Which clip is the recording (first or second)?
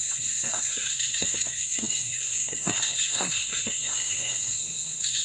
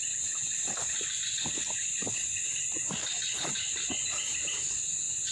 second